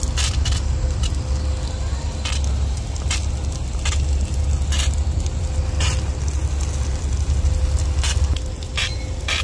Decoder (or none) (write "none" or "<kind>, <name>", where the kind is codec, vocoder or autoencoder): none